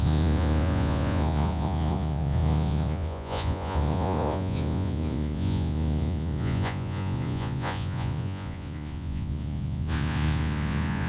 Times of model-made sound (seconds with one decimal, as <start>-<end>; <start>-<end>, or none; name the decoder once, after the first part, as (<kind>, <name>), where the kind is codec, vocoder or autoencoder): 0.0-11.1 (vocoder, Vocos)